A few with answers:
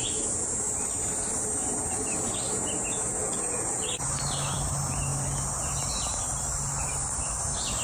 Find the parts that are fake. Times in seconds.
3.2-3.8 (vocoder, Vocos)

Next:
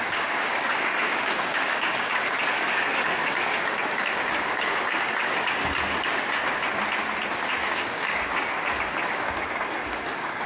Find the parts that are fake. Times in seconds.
0.0-6.4 (codec, DAC); 7.5-10.5

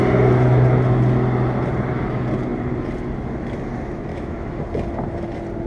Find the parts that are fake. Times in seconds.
4.1-4.6 (autoencoder, DAC-VAE)

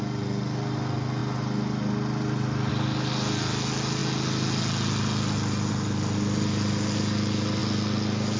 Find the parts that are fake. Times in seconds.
none